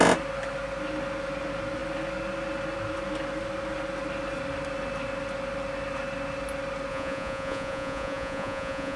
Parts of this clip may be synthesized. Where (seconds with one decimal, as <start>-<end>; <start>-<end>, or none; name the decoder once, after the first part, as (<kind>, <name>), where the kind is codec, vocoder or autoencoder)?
6.9-9.0 (vocoder, Vocos)